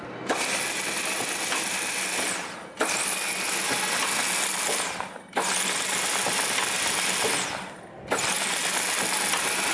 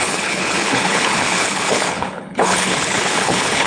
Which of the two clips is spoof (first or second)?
second